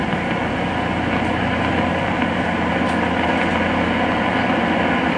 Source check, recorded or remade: recorded